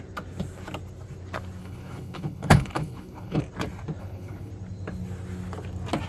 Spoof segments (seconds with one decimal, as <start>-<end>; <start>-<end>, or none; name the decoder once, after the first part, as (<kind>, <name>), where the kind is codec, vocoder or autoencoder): 1.6-3.4 (codec, HILCodec); 4.0-4.5